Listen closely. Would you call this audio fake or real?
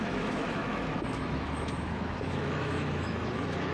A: fake